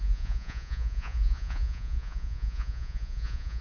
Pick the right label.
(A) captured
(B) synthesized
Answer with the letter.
B